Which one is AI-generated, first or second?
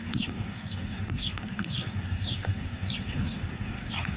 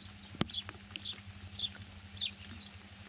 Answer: first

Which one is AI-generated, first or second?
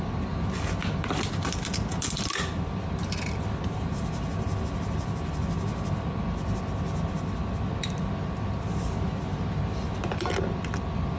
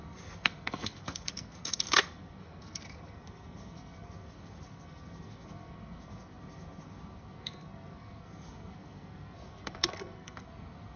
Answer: second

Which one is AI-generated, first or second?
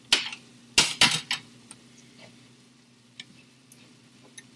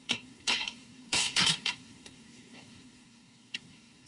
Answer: second